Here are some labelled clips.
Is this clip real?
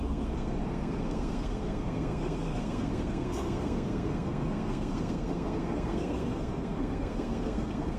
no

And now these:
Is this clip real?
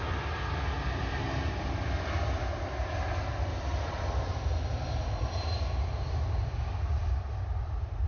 yes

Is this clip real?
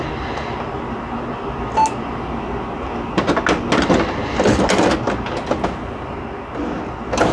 yes